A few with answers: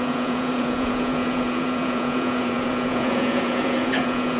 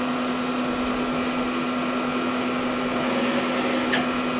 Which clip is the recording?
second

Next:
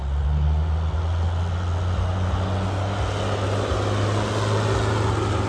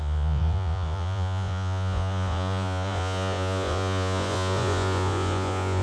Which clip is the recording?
first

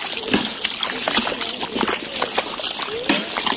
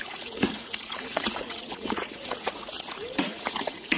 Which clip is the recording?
first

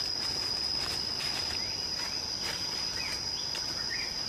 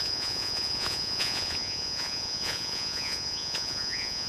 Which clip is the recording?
first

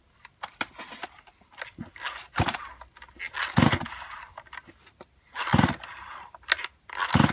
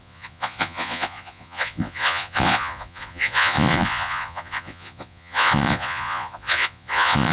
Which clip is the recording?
first